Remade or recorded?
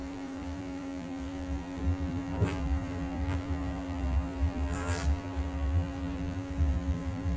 remade